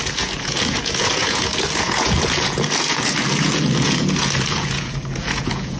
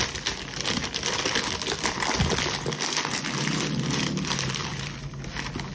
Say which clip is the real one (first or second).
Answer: second